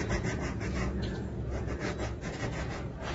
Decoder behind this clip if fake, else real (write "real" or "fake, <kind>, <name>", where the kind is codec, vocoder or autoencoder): fake, vocoder, Vocos